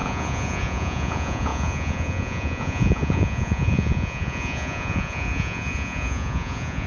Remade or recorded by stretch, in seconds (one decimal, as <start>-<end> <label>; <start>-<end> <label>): 0.0-6.9 remade